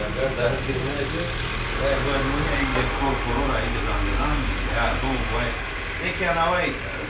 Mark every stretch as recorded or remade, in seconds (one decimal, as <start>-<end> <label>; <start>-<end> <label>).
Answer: 0.0-7.1 recorded